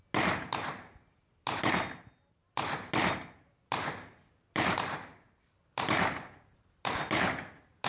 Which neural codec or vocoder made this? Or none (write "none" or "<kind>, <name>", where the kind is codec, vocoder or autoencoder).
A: none